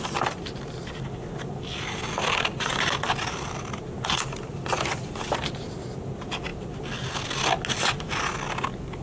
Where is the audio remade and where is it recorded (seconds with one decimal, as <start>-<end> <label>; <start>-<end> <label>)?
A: 0.0-9.0 recorded